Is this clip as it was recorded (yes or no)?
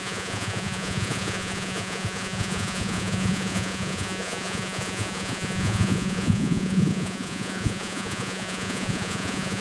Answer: no